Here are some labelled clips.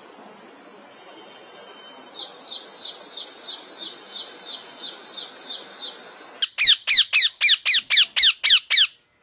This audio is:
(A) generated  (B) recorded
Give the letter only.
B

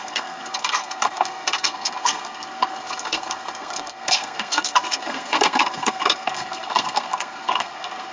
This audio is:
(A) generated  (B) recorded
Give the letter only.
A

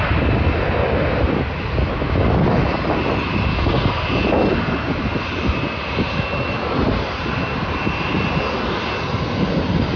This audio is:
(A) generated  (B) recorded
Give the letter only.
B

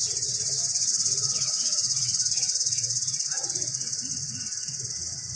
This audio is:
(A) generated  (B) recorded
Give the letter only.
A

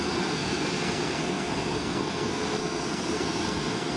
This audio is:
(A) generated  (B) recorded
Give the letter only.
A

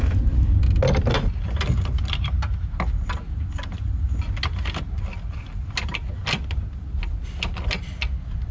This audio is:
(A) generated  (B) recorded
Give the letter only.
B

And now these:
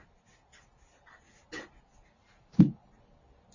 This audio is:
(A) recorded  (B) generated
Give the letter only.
A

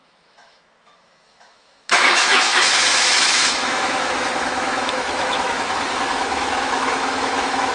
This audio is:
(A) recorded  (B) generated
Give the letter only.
B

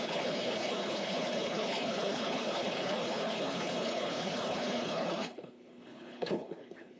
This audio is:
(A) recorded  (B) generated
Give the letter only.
B